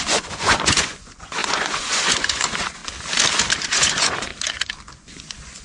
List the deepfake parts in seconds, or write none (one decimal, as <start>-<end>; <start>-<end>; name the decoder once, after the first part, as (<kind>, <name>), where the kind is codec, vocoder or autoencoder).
0.0-2.8 (vocoder, Vocos); 3.7-4.3; 4.9-5.6